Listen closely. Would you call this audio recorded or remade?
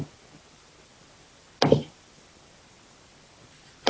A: remade